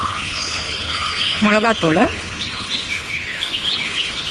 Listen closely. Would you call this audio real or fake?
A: fake